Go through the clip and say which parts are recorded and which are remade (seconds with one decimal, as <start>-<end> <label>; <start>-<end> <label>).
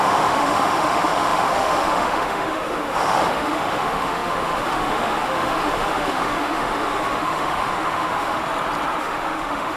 0.0-8.4 remade; 8.4-9.0 recorded; 9.0-9.8 remade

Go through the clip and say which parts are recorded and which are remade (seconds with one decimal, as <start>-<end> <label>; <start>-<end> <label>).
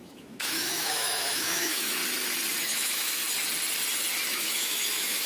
0.0-2.0 remade; 2.0-2.6 recorded; 2.6-3.2 remade; 3.2-4.3 recorded; 4.3-5.3 remade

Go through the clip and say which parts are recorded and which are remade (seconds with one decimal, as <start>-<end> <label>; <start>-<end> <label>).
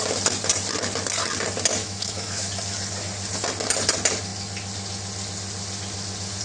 0.0-1.8 recorded; 1.8-2.5 remade; 2.5-6.4 recorded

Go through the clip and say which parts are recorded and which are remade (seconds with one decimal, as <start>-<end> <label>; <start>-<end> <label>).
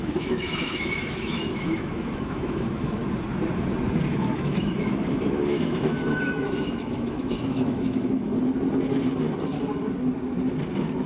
0.0-3.0 remade; 3.0-4.1 recorded; 4.1-8.3 remade; 8.3-11.1 recorded